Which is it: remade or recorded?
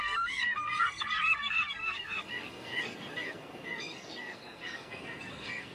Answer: remade